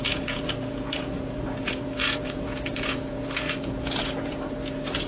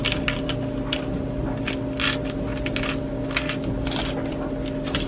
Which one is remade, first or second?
first